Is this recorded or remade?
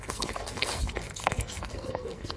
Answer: remade